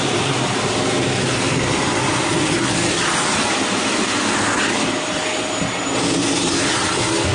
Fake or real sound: real